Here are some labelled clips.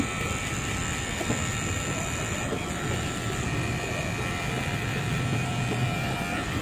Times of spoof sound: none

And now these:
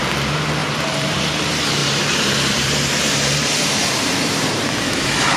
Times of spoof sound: 0.6-1.2 (vocoder, BigVGAN v2); 1.8-5.0

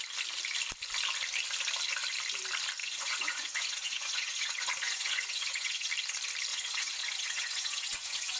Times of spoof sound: 2.8-5.9 (vocoder, Vocos); 6.5-8.4

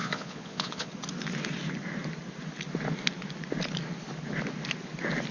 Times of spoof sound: 0.0-0.9 (vocoder, Vocos)

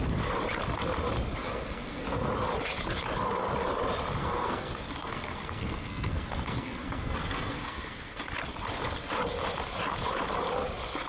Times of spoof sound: 1.4-2.3 (codec, SNAC); 4.2-8.2

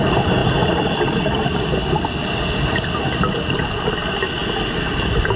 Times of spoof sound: none